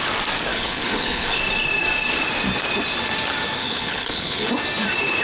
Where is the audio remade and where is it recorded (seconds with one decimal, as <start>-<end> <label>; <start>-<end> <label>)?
0.0-0.5 recorded; 0.5-1.4 remade; 1.4-3.6 recorded; 3.6-4.5 remade; 4.5-5.2 recorded

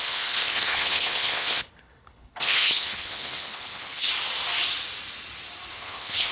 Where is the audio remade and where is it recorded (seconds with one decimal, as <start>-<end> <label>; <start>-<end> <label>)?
0.0-4.1 remade; 4.1-5.7 recorded; 5.7-6.3 remade